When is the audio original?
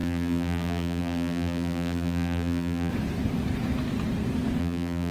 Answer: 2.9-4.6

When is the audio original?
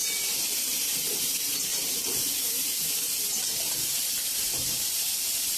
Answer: 1.2-1.7; 2.8-4.2; 5.1-5.6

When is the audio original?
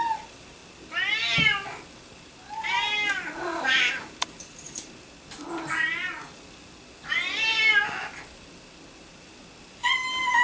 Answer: 0.6-3.1; 5.9-9.7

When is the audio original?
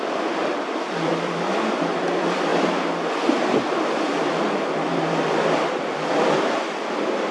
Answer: 2.5-4.1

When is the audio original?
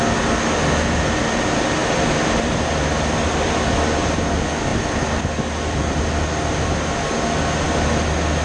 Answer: 0.0-1.8; 3.3-4.7; 5.3-8.4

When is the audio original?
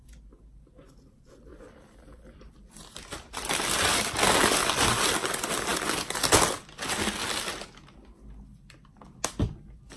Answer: 0.0-1.5; 4.1-10.0